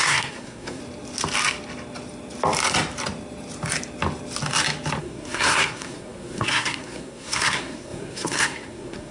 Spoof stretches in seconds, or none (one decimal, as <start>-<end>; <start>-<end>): 0.0-0.8; 5.0-9.1

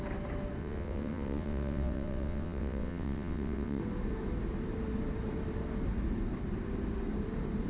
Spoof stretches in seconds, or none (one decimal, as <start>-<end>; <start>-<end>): 0.6-3.8

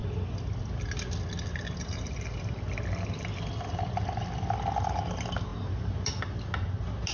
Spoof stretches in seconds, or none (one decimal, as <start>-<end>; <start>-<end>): none

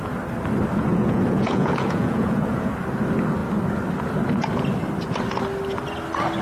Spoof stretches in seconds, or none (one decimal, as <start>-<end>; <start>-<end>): 0.9-2.7

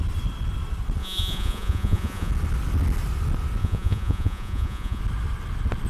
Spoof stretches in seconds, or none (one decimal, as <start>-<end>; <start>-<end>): 1.0-2.3; 3.6-5.0